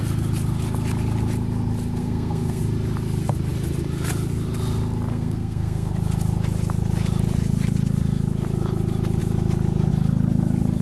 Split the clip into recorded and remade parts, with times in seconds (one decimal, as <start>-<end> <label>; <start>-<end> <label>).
0.0-2.0 recorded; 2.0-2.6 remade; 2.6-5.1 recorded; 5.1-5.9 remade; 5.9-10.8 recorded